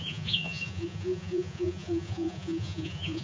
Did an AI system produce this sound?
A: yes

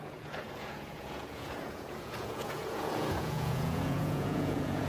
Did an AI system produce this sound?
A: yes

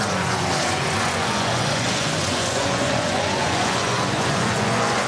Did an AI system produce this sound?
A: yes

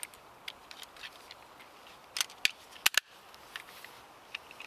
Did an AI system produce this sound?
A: no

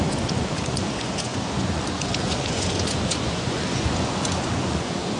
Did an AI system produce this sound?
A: yes